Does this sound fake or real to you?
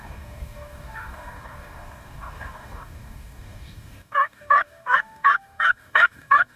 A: fake